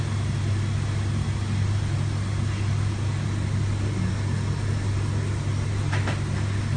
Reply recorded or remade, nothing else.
recorded